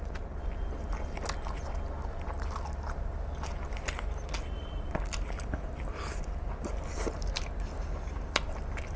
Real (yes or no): yes